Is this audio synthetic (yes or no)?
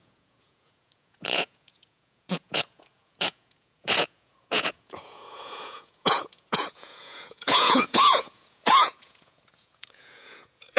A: yes